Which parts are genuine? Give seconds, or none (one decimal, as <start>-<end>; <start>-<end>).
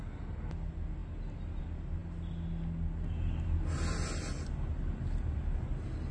0.0-6.1